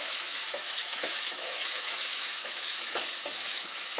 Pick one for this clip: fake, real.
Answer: fake